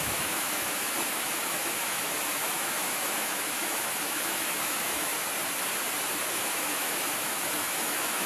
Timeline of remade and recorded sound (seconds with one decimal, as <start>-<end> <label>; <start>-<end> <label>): 0.0-5.1 remade; 5.1-6.3 recorded; 6.3-8.3 remade